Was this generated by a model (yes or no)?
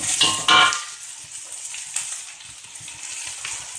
no